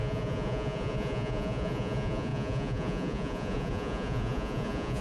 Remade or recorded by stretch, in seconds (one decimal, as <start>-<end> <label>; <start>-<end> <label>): 0.0-5.0 remade

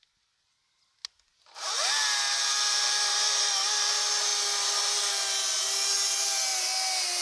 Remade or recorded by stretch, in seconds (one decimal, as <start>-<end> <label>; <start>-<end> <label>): 0.0-7.2 recorded

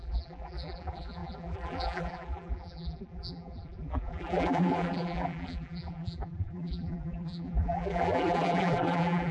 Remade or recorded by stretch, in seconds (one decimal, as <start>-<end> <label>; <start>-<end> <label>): 0.0-9.3 remade